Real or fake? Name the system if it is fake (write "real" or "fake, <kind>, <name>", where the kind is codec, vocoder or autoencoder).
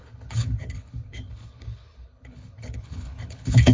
fake, codec, HILCodec